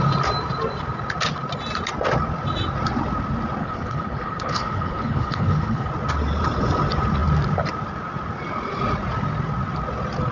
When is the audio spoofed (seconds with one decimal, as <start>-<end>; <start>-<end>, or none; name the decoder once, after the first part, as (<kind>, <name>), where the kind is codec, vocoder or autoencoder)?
3.6-5.9 (codec, HILCodec)